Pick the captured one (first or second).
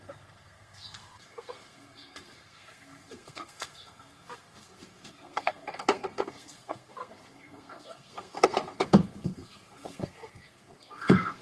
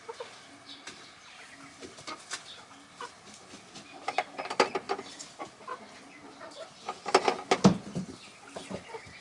second